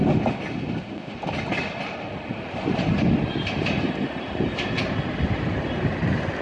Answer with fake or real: real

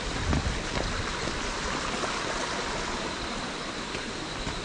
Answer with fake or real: real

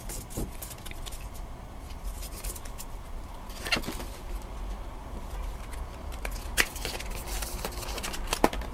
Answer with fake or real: real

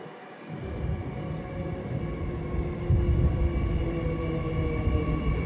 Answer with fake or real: real